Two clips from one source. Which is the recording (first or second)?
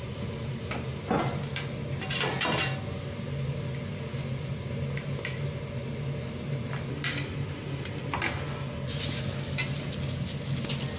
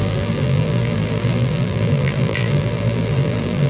first